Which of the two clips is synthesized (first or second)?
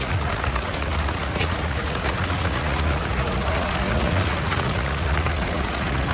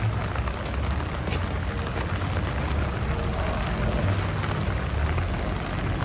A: first